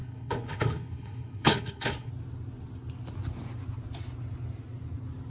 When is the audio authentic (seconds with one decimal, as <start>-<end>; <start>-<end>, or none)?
2.1-5.3